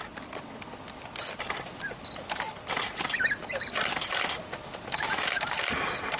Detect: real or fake real